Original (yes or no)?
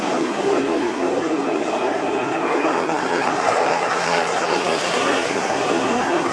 no